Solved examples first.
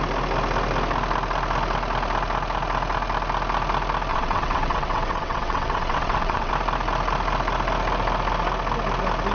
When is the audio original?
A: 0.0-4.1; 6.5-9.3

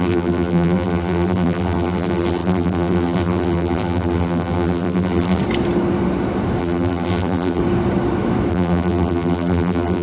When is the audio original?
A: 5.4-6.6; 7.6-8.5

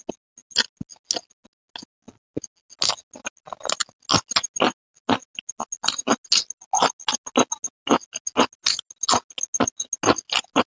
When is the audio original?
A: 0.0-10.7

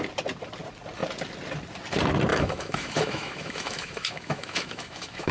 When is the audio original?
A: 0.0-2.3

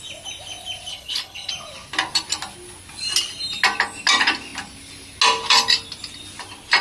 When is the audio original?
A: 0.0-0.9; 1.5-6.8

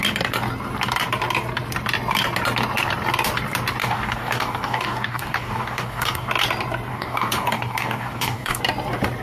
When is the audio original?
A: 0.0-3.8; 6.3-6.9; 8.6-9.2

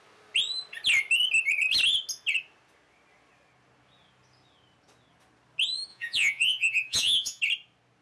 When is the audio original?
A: 0.0-5.9; 7.4-8.0